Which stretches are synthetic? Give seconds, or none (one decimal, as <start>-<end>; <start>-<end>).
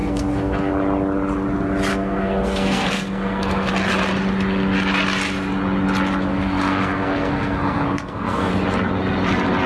0.0-0.7; 1.9-3.7; 6.3-8.5